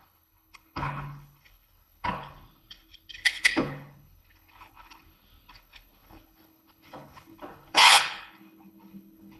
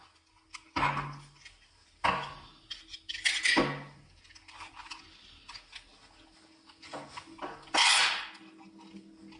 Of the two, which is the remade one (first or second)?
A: first